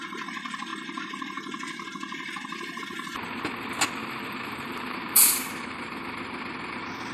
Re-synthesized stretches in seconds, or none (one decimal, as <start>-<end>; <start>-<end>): 4.0-6.0